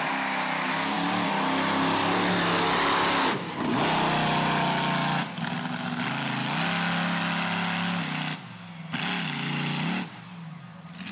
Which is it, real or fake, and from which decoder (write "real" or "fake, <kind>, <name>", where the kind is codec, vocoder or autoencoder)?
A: real